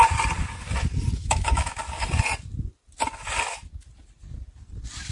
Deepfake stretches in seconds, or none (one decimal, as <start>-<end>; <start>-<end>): 1.2-1.8